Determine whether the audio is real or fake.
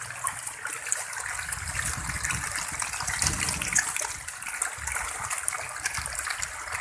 real